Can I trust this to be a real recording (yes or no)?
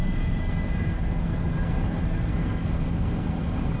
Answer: no